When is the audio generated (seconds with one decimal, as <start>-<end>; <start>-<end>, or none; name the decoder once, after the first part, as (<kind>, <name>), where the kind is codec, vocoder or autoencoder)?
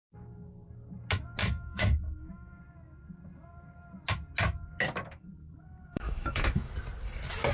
1.4-2.6 (autoencoder, DAC-VAE); 5.9-6.7